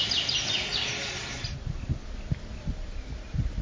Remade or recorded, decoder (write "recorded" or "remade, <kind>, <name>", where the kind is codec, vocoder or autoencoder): recorded